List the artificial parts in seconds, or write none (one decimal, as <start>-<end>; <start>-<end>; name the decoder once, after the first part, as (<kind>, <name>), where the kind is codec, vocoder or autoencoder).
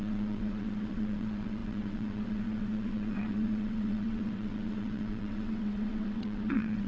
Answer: 0.0-6.9 (vocoder, WaveNeXt)